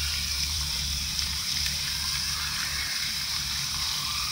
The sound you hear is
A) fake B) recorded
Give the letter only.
A